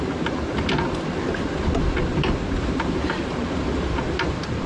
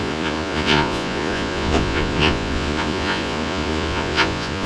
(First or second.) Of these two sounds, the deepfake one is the second